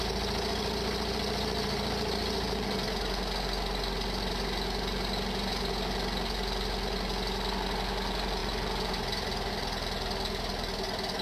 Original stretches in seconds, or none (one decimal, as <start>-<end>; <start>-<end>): 0.0-11.2